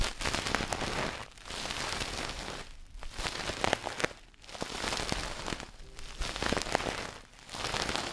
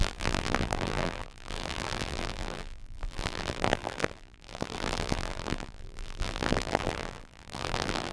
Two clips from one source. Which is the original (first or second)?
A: first